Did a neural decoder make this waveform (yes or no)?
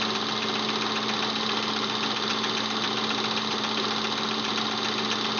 no